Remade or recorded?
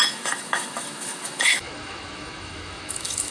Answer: remade